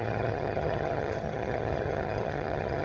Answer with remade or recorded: remade